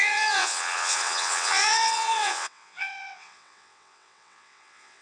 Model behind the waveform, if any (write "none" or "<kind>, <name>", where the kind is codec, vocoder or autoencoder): vocoder, WaveNeXt